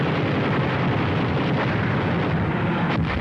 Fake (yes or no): no